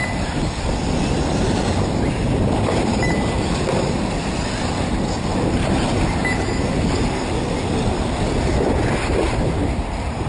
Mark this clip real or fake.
real